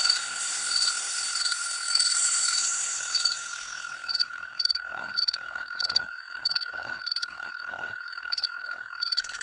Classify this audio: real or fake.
fake